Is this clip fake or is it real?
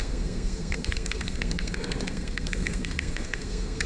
fake